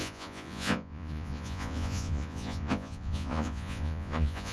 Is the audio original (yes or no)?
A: no